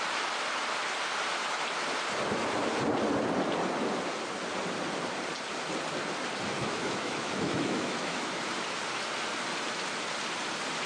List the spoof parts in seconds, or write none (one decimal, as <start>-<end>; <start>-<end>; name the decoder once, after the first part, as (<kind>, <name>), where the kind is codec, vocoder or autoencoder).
6.6-8.4 (autoencoder, DAC-VAE)